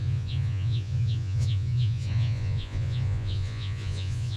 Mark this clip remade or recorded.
remade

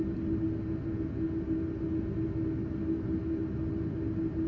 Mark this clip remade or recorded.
recorded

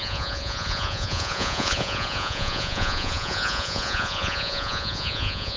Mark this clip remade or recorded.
remade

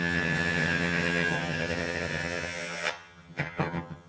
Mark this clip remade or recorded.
remade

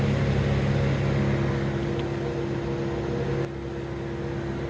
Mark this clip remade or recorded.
recorded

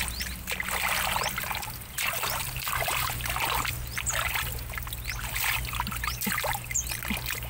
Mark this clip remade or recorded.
recorded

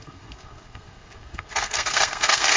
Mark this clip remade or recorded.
remade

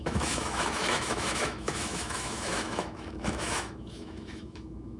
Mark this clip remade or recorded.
remade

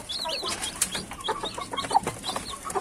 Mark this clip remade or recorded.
recorded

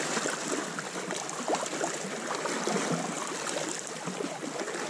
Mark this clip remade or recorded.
recorded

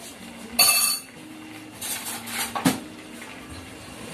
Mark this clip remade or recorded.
recorded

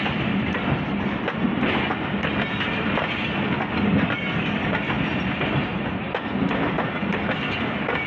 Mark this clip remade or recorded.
recorded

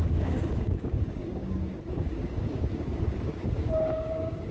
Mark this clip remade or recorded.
remade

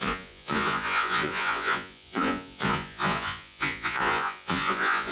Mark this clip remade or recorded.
remade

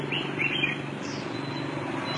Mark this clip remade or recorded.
recorded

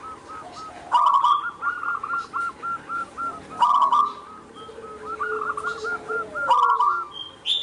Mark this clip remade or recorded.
recorded